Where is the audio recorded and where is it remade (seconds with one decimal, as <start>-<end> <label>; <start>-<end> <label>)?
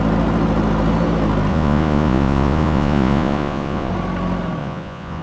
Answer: 0.0-1.5 recorded; 1.5-3.9 remade; 3.9-4.6 recorded; 4.6-5.2 remade